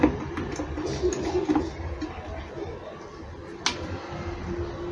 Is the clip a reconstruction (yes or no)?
no